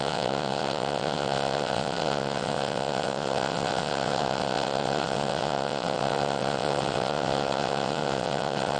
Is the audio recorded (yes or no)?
no